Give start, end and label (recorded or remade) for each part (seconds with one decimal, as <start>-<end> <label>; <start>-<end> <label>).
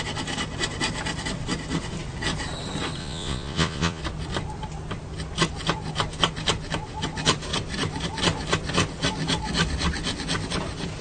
0.0-3.0 recorded; 3.0-4.0 remade; 4.0-11.0 recorded